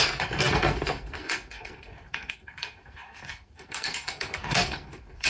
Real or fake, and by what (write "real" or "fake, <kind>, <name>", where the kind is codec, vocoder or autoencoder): fake, codec, SNAC